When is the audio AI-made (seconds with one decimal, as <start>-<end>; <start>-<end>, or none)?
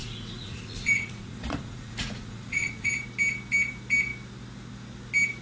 0.0-2.9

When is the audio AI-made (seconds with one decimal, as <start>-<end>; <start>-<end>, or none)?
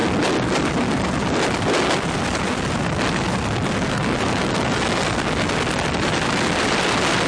none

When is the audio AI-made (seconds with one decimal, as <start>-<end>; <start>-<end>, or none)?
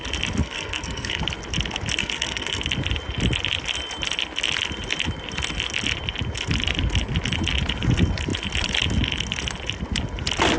0.4-1.2; 2.0-2.6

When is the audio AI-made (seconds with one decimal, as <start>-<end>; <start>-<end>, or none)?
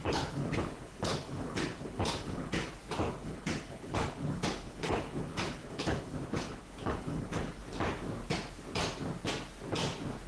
0.0-2.7; 3.1-7.6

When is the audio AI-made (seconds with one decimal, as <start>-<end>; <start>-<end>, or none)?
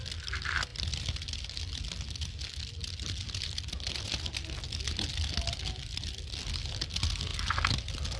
none